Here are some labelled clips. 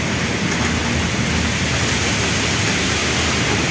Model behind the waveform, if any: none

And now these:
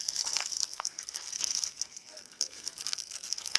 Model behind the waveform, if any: codec, SNAC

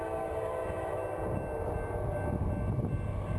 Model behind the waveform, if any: none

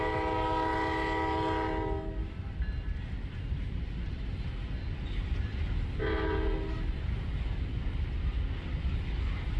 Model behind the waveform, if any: none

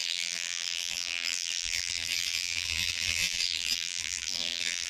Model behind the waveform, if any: vocoder, BigVGAN v2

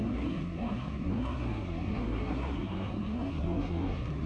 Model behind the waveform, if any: codec, SNAC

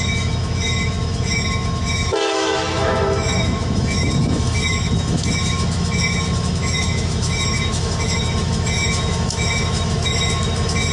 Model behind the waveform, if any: autoencoder, DAC-VAE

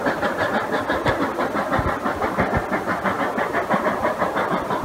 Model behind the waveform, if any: none